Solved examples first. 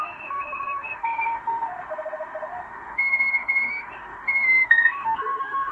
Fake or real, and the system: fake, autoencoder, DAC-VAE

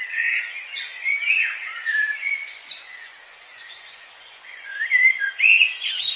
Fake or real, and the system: fake, vocoder, Vocos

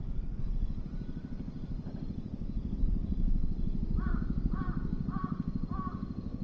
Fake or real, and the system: fake, vocoder, BigVGAN v2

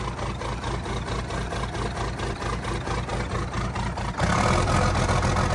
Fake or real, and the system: real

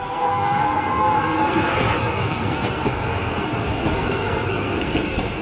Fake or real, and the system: fake, codec, SNAC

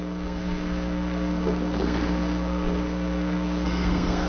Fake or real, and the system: fake, codec, SNAC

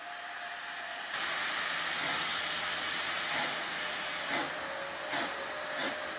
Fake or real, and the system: real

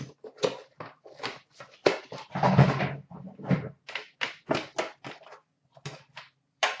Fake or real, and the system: real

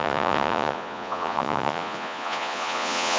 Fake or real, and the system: fake, vocoder, Vocos